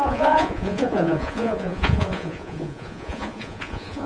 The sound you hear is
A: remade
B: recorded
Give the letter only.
A